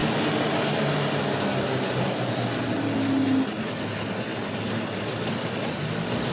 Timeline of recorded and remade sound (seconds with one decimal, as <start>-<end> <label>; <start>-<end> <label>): 0.0-6.3 recorded